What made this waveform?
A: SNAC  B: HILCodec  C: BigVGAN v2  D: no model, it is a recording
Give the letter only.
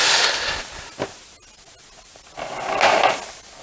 D